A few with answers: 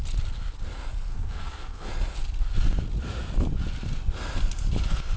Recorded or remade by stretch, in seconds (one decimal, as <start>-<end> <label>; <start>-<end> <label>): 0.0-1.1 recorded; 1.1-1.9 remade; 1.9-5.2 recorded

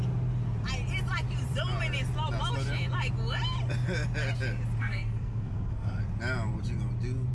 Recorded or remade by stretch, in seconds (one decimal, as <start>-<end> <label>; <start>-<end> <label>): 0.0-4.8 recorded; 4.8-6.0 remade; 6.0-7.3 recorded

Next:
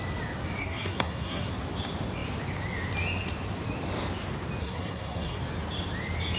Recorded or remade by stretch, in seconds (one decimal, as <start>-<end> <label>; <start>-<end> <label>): 0.0-0.6 recorded; 0.6-1.5 remade; 1.5-4.6 recorded; 4.6-5.4 remade; 5.4-6.4 recorded